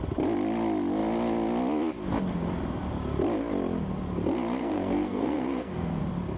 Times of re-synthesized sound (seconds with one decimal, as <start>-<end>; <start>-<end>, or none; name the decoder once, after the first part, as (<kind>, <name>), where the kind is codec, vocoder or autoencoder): 4.6-6.0 (codec, SNAC)